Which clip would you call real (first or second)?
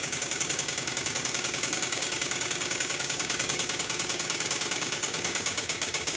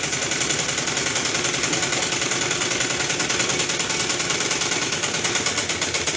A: second